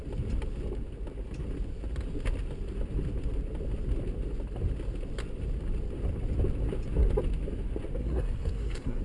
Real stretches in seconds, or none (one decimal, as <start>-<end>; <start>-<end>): 0.0-8.0

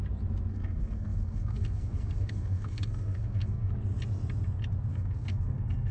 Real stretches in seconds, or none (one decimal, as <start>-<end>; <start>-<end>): 0.0-0.5; 3.7-4.9